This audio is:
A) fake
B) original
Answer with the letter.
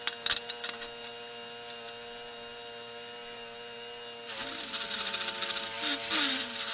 B